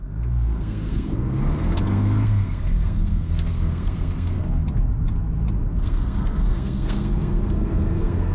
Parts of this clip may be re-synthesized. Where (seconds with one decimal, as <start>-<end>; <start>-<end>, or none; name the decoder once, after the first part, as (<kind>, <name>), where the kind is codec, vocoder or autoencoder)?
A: 0.0-4.4 (codec, SNAC); 5.7-8.3